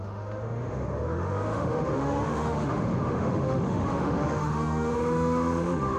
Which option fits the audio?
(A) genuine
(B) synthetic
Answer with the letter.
B